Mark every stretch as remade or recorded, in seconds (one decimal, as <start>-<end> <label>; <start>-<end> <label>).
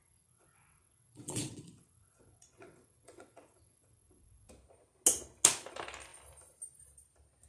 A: 0.0-4.5 remade; 4.5-7.5 recorded